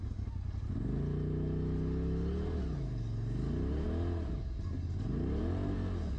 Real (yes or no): yes